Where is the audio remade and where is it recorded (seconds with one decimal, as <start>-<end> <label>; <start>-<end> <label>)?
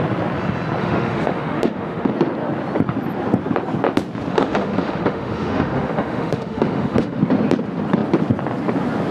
0.0-0.8 recorded; 0.8-2.1 remade; 2.1-4.3 recorded; 4.3-7.2 remade; 7.2-9.1 recorded